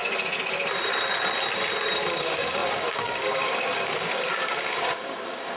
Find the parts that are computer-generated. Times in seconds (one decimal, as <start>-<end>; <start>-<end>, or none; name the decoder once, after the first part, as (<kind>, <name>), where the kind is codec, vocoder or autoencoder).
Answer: 2.2-5.6 (codec, DAC)